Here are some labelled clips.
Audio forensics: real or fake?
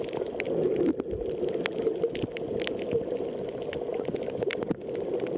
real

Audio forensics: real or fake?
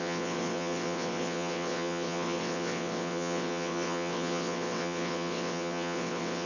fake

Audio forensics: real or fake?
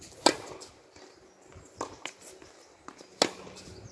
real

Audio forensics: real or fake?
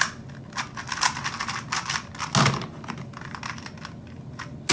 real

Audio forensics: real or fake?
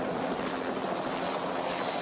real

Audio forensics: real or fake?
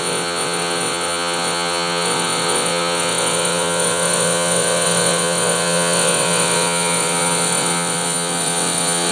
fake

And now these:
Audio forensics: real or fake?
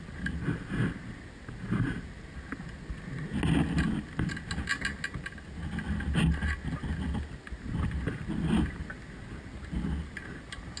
real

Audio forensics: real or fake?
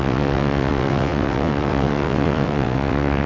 fake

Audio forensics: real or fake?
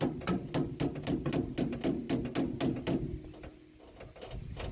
real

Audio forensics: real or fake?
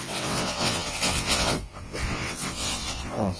fake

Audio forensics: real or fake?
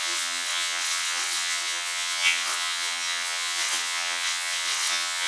fake